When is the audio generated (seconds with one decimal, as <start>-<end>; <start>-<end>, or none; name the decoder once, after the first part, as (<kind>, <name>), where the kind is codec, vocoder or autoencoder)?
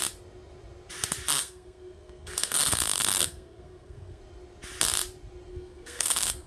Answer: 1.3-4.2 (codec, SNAC); 5.5-6.5